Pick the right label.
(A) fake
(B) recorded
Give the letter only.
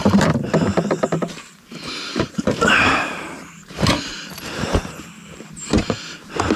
A